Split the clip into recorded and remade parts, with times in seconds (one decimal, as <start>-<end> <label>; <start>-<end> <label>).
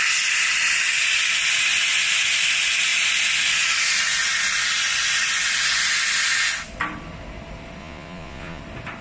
0.0-7.8 recorded; 7.8-8.6 remade; 8.6-9.0 recorded